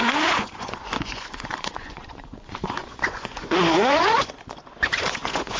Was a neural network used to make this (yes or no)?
yes